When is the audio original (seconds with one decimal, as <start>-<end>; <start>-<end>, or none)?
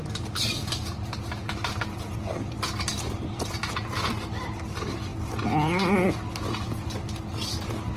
0.0-8.0